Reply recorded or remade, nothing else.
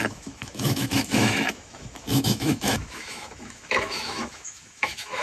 remade